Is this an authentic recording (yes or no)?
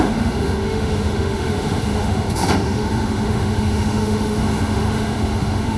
no